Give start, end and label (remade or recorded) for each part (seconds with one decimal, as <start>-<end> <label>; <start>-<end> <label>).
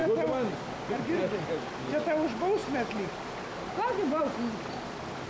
0.0-5.3 recorded